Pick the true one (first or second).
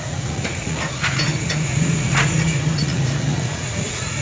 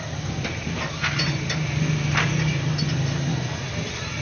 second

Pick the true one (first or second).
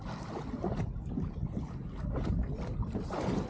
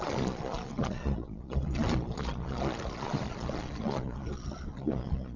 first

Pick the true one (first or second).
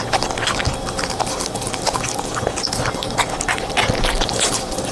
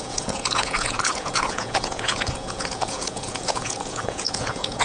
first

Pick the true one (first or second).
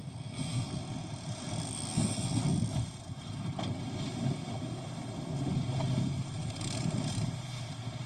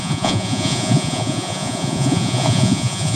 first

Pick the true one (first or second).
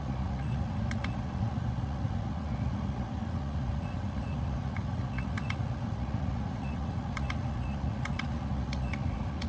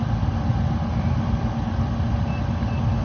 second